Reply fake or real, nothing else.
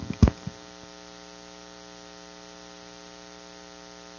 real